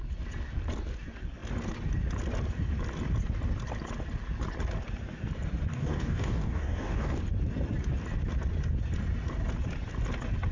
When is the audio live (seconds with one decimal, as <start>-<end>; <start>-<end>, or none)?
0.0-5.7; 7.2-10.5